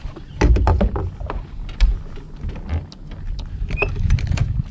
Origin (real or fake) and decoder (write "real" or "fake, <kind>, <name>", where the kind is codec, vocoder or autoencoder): real